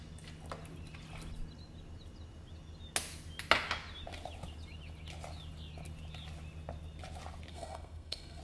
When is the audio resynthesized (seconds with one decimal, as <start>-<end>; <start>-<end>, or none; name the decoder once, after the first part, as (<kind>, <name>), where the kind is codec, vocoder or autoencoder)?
7.5-8.4 (codec, SNAC)